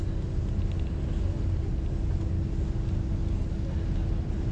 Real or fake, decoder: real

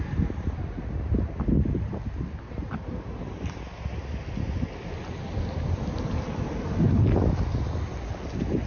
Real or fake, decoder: real